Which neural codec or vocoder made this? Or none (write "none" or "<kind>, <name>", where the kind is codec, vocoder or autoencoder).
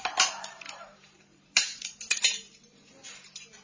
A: vocoder, BigVGAN v2